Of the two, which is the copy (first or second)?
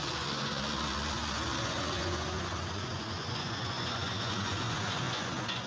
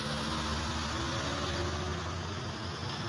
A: first